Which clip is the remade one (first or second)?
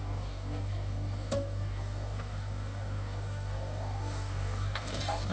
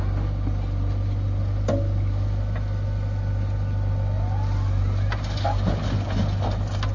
first